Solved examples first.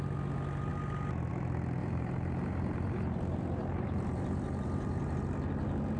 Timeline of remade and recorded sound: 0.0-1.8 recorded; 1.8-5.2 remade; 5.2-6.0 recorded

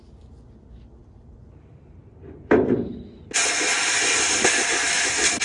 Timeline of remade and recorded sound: 0.0-1.0 recorded; 1.0-2.9 remade; 2.9-3.8 recorded; 3.8-4.4 remade; 4.4-5.4 recorded